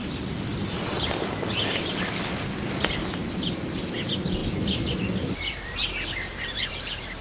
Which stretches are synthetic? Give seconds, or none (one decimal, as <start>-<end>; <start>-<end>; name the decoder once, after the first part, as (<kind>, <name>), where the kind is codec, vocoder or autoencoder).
0.0-1.2 (vocoder, BigVGAN v2); 4.4-6.7